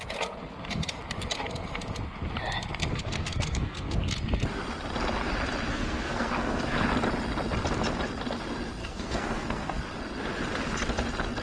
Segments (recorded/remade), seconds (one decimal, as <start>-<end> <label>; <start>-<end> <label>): 0.0-2.9 recorded; 2.9-4.0 remade; 4.0-5.7 recorded; 5.7-6.6 remade; 6.6-8.8 recorded; 8.8-9.8 remade; 9.8-11.4 recorded